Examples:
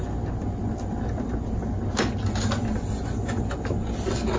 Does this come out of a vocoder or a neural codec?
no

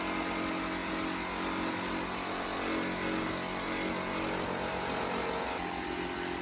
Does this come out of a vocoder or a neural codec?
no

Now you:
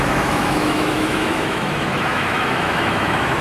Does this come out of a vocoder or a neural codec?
yes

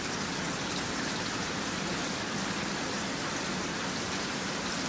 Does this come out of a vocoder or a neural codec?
no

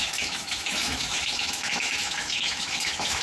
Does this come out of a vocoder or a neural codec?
yes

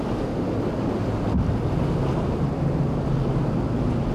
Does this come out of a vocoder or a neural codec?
no